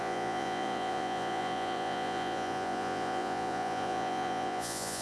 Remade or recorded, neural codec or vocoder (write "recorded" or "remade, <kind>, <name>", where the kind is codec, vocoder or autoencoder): remade, vocoder, Vocos